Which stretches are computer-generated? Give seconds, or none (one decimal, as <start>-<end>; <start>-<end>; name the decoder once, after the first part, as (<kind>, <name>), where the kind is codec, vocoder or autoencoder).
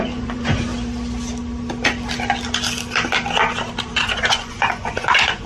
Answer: 0.0-0.7 (vocoder, Vocos); 4.0-5.5